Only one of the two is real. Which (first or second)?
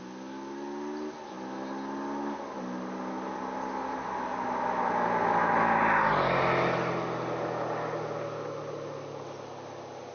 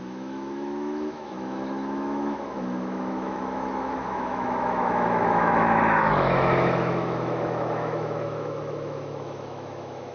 first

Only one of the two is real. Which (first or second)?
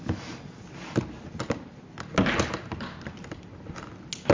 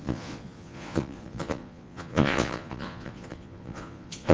first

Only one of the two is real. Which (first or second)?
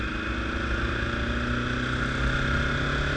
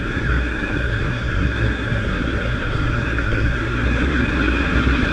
first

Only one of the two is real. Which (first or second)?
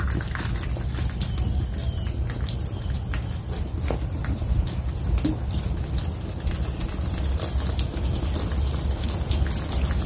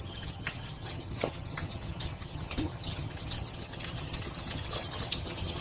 first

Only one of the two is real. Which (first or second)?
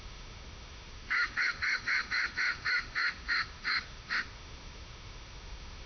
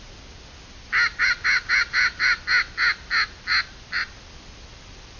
second